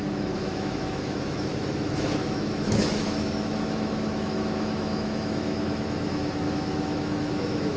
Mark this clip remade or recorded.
remade